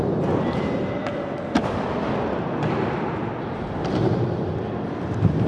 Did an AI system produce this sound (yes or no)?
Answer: no